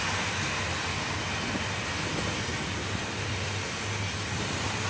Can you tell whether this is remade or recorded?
recorded